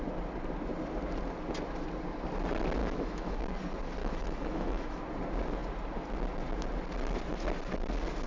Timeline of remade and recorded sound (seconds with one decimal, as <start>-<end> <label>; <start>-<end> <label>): 0.0-2.8 recorded; 2.8-3.4 remade; 3.4-4.0 recorded; 4.0-5.0 remade; 5.0-8.3 recorded